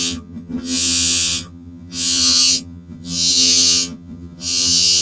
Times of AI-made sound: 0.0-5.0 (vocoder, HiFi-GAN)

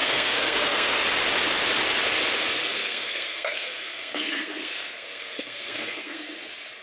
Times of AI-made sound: 0.0-1.0 (codec, SNAC); 2.6-6.2

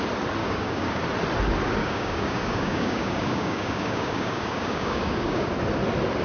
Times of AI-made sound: 0.4-1.0 (codec, DAC); 1.8-5.5

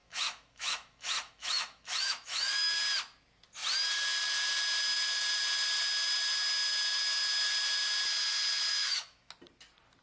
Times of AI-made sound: 0.0-2.8 (autoencoder, DAC-VAE); 8.7-9.3

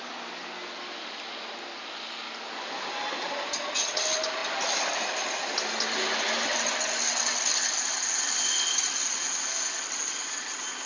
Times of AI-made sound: none

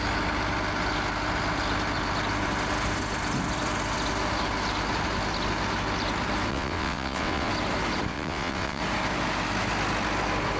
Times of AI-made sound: 6.5-7.5 (vocoder, WaveNeXt); 8.1-8.8

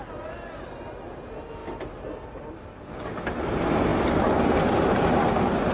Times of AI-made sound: none

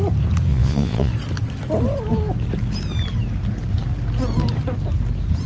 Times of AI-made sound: 0.5-1.1 (vocoder, Vocos)